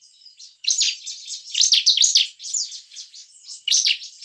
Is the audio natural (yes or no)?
yes